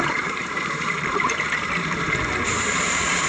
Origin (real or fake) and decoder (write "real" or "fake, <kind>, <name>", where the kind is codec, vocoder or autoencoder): fake, vocoder, BigVGAN v2